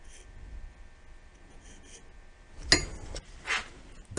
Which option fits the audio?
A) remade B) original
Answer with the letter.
B